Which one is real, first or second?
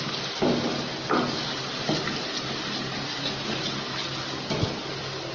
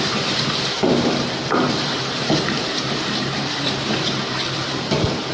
first